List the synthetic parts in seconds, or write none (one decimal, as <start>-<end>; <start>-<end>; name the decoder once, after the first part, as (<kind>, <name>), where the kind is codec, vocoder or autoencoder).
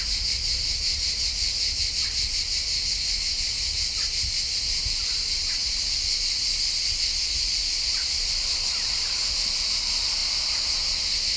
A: none